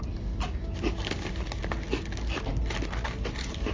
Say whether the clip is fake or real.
real